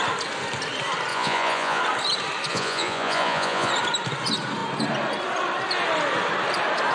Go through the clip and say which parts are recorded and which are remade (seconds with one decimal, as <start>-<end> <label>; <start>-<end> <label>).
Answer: 0.0-1.1 recorded; 1.1-1.8 remade; 1.8-2.5 recorded; 2.5-3.7 remade; 3.7-6.9 recorded